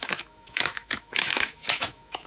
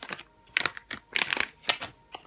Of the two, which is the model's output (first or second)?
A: first